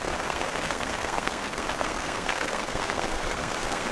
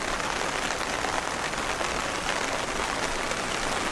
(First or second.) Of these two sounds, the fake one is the first